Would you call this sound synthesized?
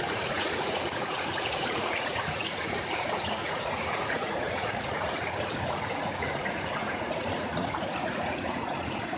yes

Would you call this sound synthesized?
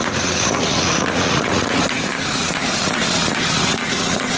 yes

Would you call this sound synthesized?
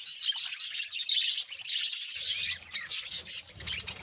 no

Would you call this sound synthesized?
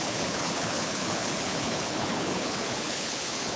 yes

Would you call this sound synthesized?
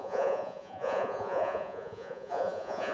yes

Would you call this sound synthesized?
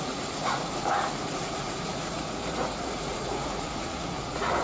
yes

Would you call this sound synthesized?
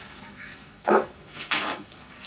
yes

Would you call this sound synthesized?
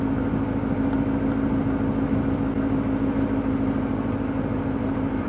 no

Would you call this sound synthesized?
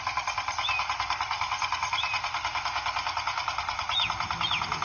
no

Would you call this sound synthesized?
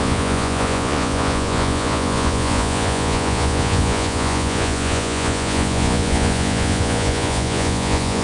yes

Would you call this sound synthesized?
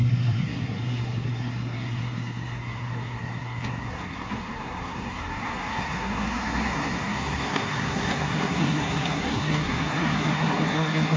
yes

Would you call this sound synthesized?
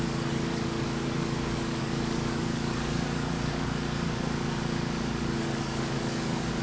yes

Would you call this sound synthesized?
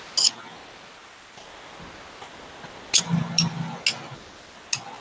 no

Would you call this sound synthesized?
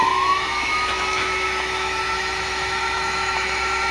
yes